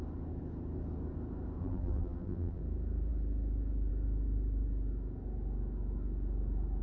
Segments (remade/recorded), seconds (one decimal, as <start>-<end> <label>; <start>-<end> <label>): 0.0-1.6 recorded; 1.6-2.6 remade; 2.6-6.8 recorded